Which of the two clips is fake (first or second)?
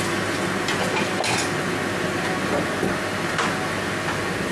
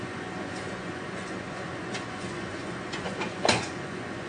second